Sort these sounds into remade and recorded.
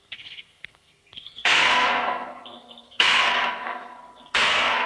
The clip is remade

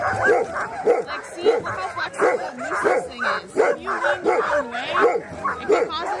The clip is recorded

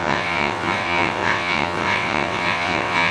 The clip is remade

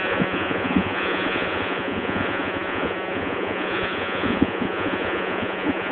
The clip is remade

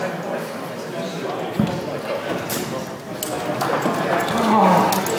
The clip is recorded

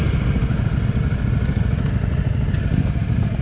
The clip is recorded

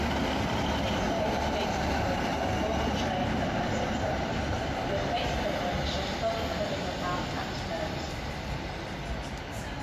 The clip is recorded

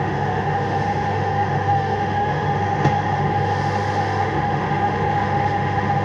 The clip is remade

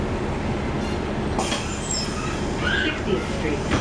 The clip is recorded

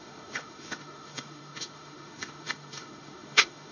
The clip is remade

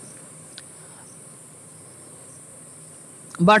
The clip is recorded